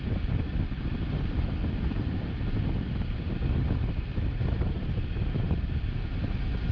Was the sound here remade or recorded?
recorded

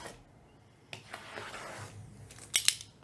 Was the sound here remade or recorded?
recorded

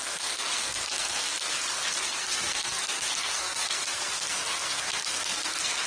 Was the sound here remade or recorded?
remade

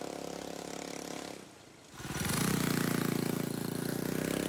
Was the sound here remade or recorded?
recorded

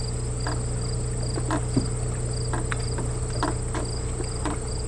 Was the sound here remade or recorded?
recorded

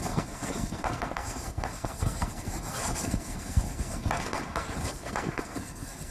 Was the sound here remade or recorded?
remade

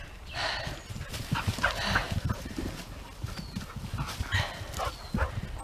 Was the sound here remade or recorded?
recorded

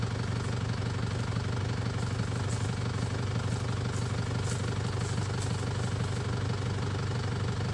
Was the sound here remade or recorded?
recorded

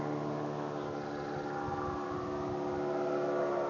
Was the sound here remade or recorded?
recorded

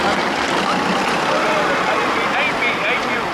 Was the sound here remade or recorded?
recorded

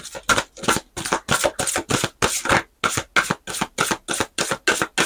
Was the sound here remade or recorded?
recorded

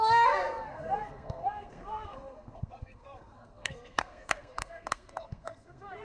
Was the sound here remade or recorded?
remade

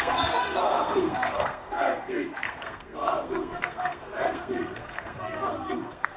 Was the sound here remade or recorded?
remade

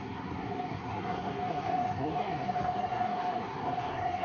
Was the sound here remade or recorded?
remade